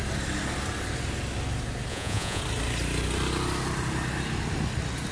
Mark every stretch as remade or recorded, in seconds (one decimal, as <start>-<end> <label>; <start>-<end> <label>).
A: 0.0-1.9 recorded; 1.9-2.4 remade; 2.4-5.1 recorded